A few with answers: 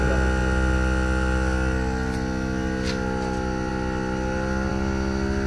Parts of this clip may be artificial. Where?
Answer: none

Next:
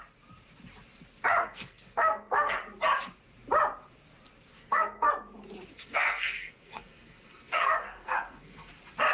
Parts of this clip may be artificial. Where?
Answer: 1.4-2.6; 4.5-5.1; 5.7-8.7